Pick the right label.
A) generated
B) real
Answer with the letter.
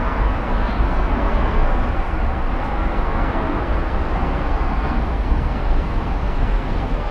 A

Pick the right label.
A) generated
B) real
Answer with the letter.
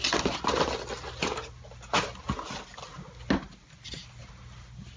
B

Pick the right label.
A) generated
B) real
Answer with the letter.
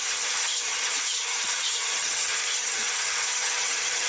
A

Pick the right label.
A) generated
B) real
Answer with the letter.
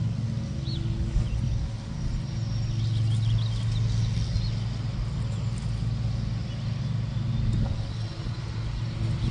B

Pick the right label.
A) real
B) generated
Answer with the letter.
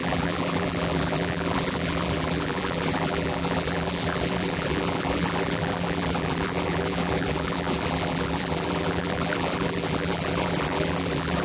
B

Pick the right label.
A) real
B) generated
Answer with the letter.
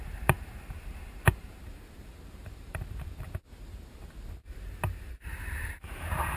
B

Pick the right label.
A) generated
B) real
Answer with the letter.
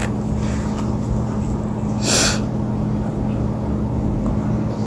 B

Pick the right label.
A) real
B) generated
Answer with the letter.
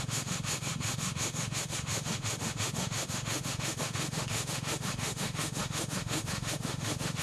B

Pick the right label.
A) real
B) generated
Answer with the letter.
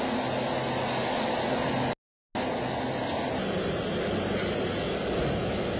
A